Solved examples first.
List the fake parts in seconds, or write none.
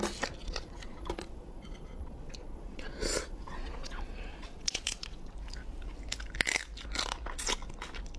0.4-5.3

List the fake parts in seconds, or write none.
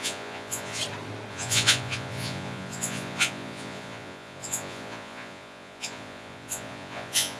0.0-0.8; 1.3-7.4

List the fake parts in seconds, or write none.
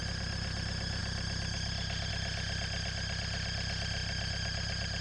none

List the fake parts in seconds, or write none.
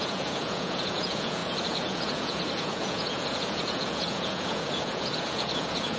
0.0-6.0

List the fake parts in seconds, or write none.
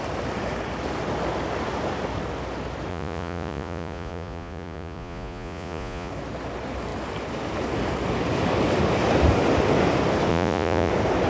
2.9-6.1; 10.3-10.9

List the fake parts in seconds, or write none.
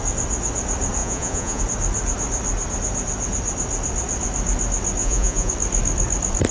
1.0-1.6; 5.0-5.5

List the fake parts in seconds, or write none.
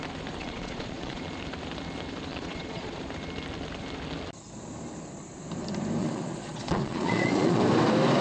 0.4-1.2; 2.3-3.0; 6.0-7.6